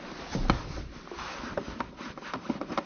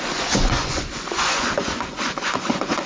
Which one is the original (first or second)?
first